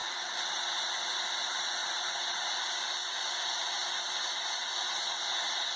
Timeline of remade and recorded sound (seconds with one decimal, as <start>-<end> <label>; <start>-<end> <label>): 0.0-0.9 remade; 0.9-1.8 recorded; 1.8-2.6 remade; 2.6-3.0 recorded; 3.0-4.2 remade; 4.2-5.8 recorded